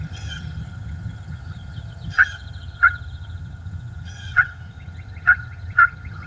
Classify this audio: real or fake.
fake